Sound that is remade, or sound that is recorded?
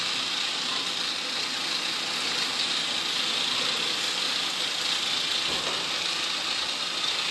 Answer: recorded